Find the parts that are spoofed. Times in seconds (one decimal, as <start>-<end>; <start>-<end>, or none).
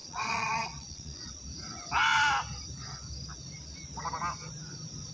0.0-1.3